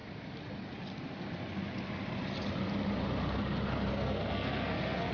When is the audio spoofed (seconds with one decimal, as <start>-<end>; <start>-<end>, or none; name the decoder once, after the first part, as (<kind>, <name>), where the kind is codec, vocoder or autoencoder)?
3.9-5.1 (codec, SNAC)

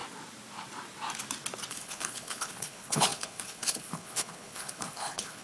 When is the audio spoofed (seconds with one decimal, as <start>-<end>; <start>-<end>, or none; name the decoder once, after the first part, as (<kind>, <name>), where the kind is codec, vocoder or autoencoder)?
1.7-5.4 (codec, HILCodec)

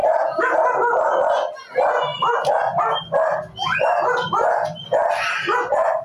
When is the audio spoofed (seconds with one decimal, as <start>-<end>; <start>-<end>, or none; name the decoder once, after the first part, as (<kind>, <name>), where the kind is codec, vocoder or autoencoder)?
0.0-0.6 (vocoder, Vocos)

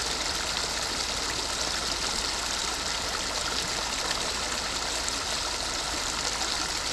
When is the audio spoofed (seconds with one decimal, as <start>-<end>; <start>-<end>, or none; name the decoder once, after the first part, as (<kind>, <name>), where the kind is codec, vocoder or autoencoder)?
none